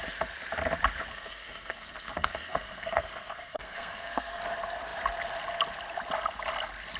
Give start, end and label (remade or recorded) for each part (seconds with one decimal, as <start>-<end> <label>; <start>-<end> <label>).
0.0-1.1 recorded; 1.1-4.4 remade; 4.4-7.0 recorded